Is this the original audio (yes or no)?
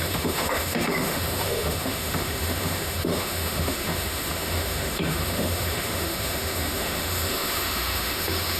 no